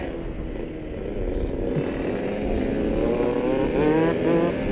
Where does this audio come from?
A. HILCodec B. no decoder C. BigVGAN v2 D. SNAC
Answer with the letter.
B